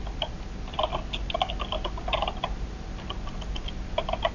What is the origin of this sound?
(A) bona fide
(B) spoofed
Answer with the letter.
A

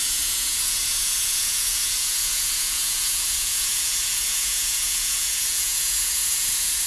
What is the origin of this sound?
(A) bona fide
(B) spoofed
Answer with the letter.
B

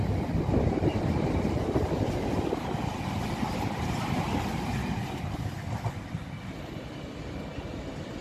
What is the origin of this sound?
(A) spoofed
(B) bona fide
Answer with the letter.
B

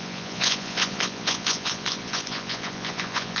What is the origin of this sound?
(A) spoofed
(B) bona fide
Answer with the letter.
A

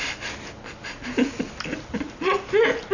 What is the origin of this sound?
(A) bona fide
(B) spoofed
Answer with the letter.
A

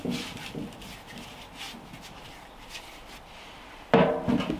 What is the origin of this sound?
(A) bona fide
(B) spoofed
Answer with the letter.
A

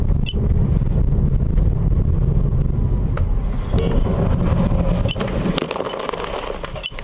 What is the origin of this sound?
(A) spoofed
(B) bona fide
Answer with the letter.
B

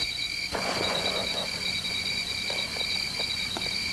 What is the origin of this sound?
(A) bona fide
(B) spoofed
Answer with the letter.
B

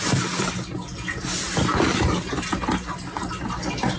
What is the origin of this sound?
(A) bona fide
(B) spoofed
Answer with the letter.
A